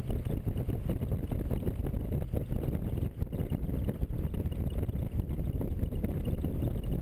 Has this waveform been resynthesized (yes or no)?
no